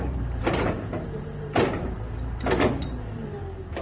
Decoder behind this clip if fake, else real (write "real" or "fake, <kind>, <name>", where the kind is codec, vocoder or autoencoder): fake, vocoder, BigVGAN v2